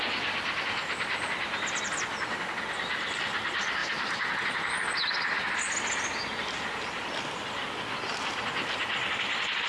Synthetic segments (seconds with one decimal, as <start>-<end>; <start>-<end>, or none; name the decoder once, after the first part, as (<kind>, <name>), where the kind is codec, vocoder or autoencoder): none